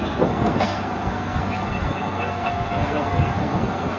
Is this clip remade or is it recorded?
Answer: remade